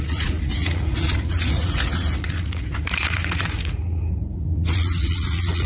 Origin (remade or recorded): remade